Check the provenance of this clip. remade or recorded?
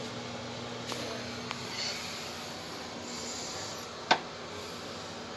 recorded